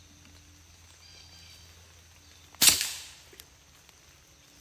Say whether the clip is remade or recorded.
recorded